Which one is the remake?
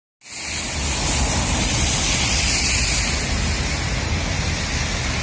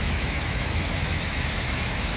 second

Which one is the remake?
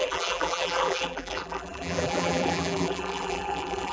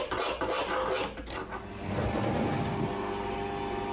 first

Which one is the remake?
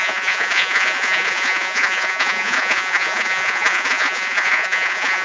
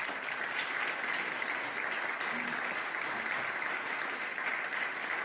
first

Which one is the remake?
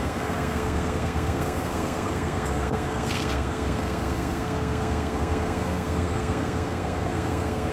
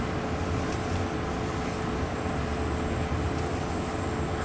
first